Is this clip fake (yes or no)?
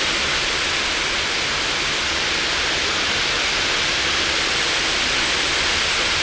no